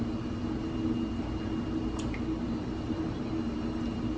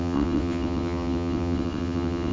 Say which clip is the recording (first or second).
first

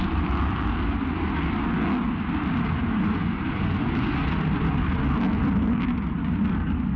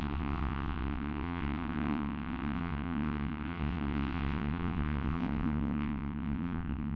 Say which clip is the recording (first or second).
first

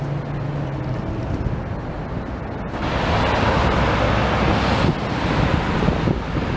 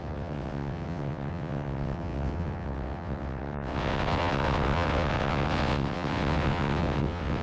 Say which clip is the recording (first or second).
first